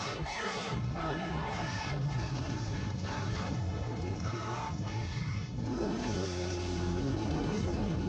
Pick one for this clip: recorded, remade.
remade